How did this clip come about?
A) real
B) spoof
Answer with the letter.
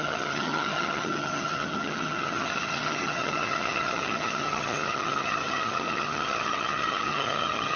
B